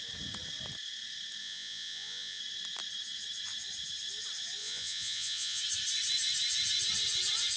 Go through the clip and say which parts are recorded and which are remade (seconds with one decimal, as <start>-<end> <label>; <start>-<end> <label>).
0.0-1.4 recorded; 1.4-2.4 remade; 2.4-4.6 recorded; 4.6-5.6 remade; 5.6-7.6 recorded